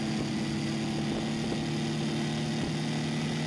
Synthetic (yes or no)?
no